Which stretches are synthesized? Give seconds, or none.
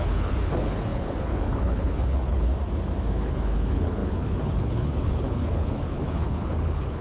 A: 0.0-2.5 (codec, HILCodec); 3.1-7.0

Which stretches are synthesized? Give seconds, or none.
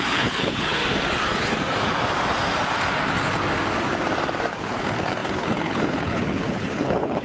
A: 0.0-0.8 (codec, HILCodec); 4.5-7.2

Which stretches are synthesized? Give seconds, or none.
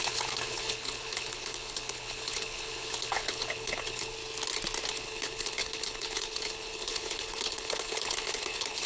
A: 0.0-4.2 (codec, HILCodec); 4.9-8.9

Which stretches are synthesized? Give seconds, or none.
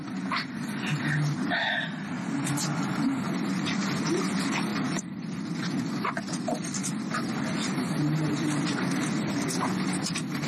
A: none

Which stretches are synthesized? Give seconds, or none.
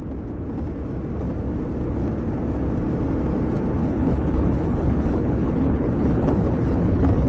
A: 3.8-7.3 (codec, HILCodec)